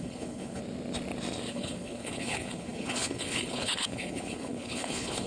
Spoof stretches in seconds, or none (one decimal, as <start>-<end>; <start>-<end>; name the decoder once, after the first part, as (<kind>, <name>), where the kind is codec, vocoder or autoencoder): 0.0-0.6 (codec, HILCodec); 1.5-5.3